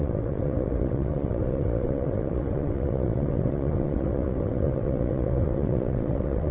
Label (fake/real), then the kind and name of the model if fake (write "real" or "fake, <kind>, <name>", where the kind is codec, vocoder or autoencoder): fake, vocoder, WaveNeXt